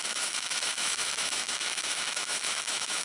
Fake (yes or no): yes